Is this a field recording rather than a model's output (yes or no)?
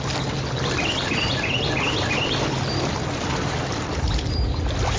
yes